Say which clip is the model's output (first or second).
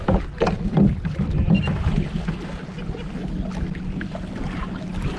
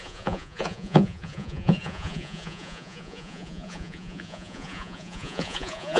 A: second